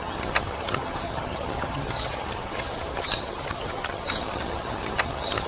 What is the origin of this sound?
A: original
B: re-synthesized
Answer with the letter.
B